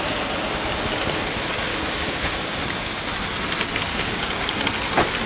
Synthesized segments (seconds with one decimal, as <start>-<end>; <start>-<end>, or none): 1.7-3.0; 3.9-4.5